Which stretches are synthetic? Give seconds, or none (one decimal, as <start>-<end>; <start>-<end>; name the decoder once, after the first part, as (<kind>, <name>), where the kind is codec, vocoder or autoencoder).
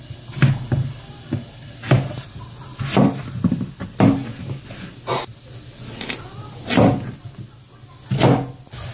none